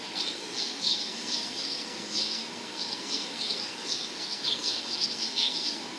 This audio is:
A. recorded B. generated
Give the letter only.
B